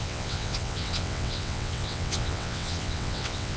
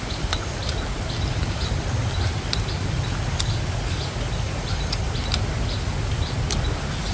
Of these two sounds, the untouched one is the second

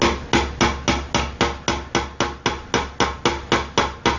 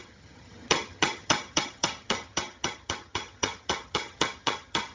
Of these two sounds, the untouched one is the first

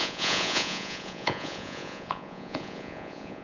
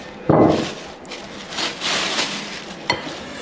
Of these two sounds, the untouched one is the second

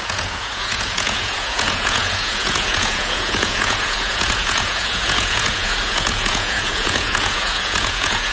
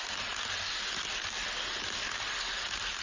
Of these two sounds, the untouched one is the second